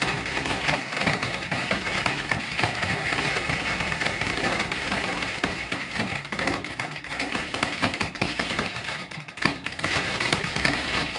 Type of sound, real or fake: fake